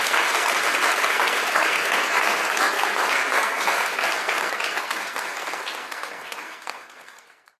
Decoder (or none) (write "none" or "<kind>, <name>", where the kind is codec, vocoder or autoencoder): codec, SNAC